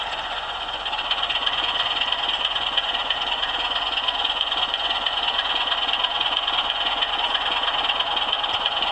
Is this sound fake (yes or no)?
yes